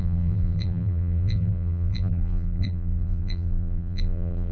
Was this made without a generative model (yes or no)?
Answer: no